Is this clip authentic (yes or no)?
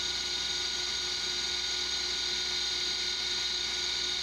yes